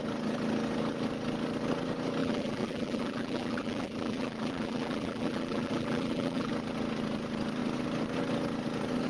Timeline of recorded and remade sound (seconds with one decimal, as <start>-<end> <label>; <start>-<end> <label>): 0.0-2.2 recorded; 2.2-6.5 remade; 6.5-9.1 recorded

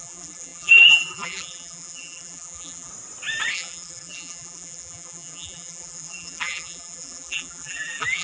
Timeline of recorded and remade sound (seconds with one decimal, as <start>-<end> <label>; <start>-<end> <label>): 0.0-2.9 remade; 2.9-3.5 recorded; 3.5-8.2 remade

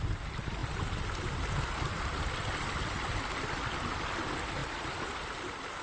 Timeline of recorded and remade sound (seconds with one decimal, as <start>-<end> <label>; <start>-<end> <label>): 0.0-0.6 recorded; 0.6-4.1 remade; 4.1-4.6 recorded; 4.6-5.3 remade; 5.3-5.8 recorded

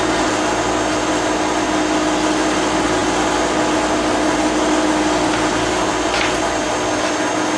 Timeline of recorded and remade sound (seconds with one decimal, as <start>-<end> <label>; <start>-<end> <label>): 0.0-7.6 recorded

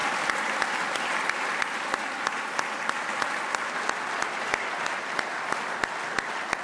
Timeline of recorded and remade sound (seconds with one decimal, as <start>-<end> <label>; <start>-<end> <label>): 0.0-6.6 recorded

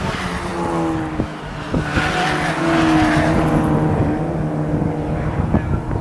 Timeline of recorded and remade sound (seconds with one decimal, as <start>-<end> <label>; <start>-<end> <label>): 0.0-6.0 recorded